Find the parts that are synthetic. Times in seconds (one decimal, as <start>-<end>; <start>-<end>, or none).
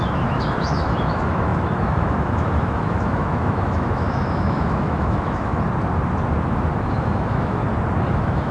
0.0-5.5; 6.9-7.6; 8.1-8.5